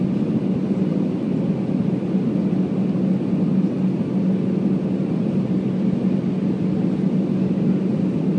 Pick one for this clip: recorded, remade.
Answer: recorded